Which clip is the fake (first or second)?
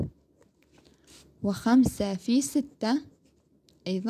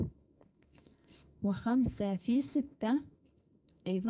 second